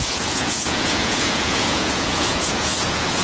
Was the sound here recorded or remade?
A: remade